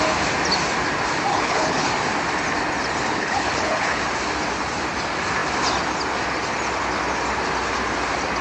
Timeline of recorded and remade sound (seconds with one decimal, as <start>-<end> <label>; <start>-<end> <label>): 0.0-1.3 recorded; 1.3-1.9 remade; 1.9-3.1 recorded; 3.1-4.0 remade; 4.0-8.4 recorded